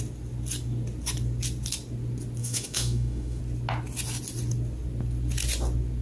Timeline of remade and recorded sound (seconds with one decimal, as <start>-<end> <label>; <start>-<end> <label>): 0.0-2.4 recorded; 2.4-3.4 remade; 3.4-6.0 recorded